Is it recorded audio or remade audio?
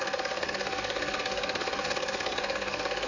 remade